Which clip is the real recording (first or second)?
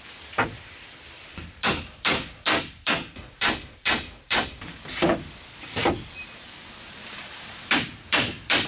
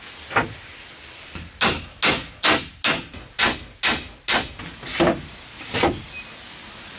second